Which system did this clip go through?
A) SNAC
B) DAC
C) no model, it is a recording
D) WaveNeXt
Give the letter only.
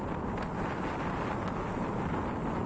C